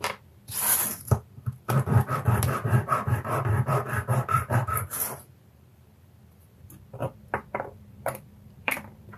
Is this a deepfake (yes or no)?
yes